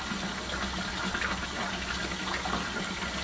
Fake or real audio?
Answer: real